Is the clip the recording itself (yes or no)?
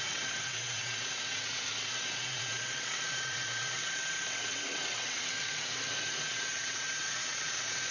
no